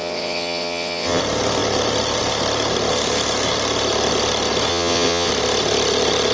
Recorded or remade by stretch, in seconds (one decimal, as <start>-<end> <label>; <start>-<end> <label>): 0.0-1.2 remade; 1.2-4.7 recorded; 4.7-5.3 remade; 5.3-6.3 recorded